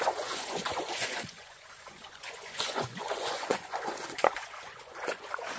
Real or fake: fake